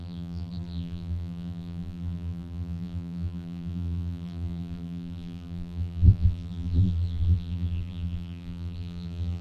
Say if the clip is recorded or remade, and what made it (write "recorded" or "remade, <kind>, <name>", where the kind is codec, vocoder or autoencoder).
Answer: remade, vocoder, BigVGAN v2